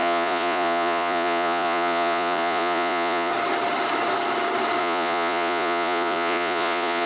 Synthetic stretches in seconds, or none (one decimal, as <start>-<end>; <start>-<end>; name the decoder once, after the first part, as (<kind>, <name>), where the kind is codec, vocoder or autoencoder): 0.0-3.3 (vocoder, Vocos); 4.8-7.1